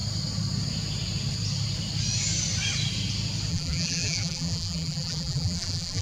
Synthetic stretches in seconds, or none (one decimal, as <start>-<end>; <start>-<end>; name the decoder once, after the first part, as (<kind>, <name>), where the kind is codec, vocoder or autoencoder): 3.5-6.0 (vocoder, BigVGAN v2)